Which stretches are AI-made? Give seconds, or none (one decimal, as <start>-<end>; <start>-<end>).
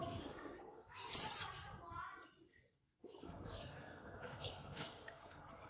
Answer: 0.0-1.0; 2.5-5.7